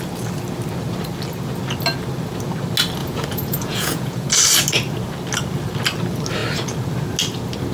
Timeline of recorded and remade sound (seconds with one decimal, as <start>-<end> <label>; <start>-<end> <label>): 0.0-3.0 recorded; 3.0-4.3 remade; 4.3-7.7 recorded